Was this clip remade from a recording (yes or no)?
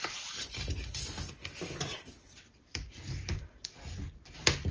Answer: no